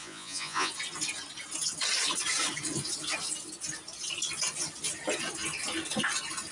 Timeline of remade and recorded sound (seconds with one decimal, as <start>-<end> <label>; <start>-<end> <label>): 0.0-0.7 remade; 0.7-6.5 recorded